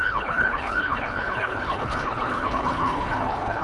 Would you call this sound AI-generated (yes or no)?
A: yes